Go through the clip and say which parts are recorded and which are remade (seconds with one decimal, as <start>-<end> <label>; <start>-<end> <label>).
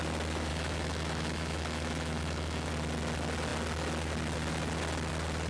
0.0-0.5 recorded; 0.5-2.7 remade; 2.7-5.5 recorded